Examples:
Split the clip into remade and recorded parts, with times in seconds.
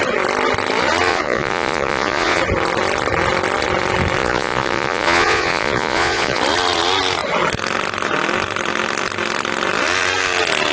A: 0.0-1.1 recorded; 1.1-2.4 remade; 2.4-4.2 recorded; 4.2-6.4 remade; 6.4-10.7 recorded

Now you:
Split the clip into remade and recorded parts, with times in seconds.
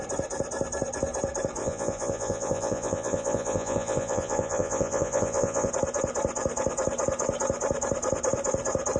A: 0.0-1.6 recorded; 1.6-5.7 remade; 5.7-9.0 recorded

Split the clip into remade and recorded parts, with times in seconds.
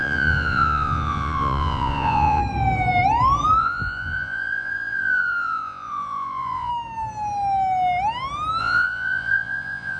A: 0.0-2.4 remade; 2.4-3.6 recorded; 3.6-6.7 remade; 6.7-8.6 recorded; 8.6-10.0 remade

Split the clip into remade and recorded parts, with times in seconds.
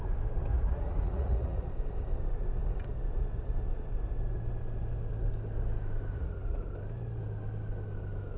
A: 0.0-0.5 recorded; 0.5-1.7 remade; 1.7-6.1 recorded; 6.1-6.6 remade; 6.6-8.4 recorded